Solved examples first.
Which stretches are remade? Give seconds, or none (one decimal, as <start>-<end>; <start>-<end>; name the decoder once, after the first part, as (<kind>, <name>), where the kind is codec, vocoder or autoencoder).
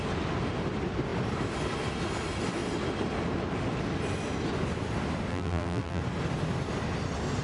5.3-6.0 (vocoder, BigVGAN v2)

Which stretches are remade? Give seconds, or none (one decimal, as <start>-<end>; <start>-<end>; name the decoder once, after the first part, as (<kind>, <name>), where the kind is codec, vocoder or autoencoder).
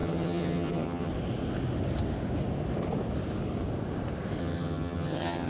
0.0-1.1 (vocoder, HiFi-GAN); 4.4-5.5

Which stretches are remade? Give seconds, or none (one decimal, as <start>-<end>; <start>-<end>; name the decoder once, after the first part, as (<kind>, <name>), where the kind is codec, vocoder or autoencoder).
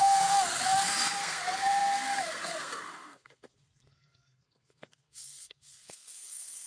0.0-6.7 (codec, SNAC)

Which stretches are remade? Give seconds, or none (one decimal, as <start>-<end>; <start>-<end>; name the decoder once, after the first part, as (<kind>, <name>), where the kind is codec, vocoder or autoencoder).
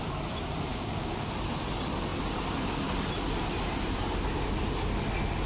0.7-1.3 (codec, DAC)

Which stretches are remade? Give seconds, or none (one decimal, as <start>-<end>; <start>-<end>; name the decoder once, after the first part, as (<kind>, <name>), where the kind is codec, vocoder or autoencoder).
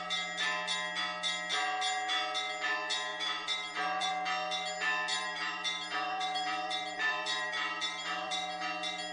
3.1-4.1 (vocoder, BigVGAN v2); 5.1-8.3